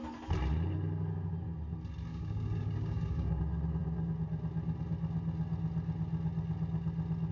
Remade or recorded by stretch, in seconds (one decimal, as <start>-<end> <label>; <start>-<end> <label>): 0.0-2.1 recorded; 2.1-3.4 remade; 3.4-7.3 recorded